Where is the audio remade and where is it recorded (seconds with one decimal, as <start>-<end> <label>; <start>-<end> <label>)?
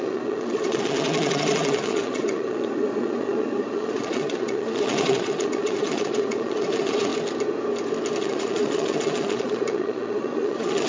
0.0-7.1 remade; 7.1-8.2 recorded; 8.2-10.9 remade